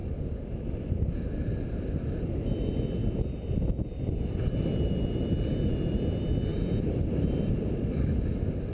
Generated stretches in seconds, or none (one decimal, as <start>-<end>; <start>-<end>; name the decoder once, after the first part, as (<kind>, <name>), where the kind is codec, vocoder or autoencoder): none